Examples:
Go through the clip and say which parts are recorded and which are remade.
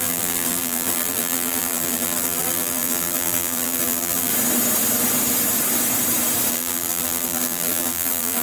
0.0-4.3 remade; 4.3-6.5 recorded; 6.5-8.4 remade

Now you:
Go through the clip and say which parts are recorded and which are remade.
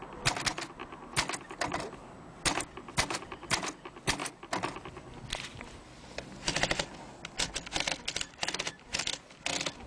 0.0-9.9 recorded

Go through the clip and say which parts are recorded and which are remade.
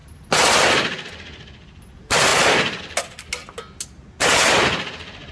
0.0-5.3 recorded